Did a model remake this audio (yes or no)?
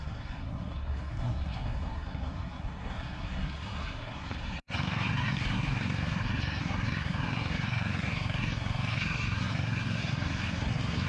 yes